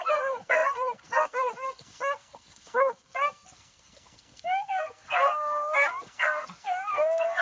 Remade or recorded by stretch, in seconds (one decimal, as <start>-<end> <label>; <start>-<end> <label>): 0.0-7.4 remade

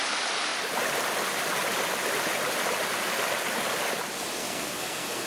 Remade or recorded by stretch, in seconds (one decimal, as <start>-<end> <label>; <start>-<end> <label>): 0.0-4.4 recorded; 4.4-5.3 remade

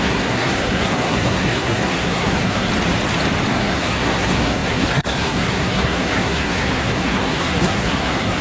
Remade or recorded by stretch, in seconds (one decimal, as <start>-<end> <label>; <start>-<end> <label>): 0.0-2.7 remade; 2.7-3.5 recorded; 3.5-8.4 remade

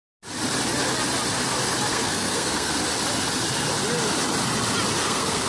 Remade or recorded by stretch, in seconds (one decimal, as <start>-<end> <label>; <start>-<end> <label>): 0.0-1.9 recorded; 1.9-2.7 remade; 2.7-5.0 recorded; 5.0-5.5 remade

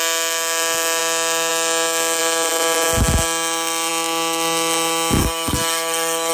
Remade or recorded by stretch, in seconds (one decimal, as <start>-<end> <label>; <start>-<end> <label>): 0.0-5.2 recorded; 5.2-6.3 remade

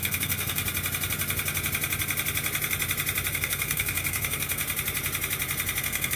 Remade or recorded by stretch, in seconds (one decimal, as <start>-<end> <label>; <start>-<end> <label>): 0.0-0.6 remade; 0.6-3.3 recorded; 3.3-4.6 remade; 4.6-5.8 recorded; 5.8-6.2 remade